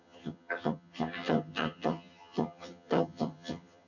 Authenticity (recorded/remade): remade